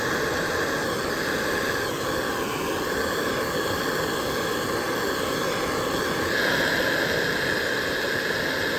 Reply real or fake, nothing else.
real